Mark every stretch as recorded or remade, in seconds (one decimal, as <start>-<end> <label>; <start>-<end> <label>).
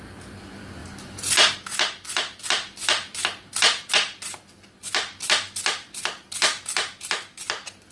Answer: 0.0-7.9 recorded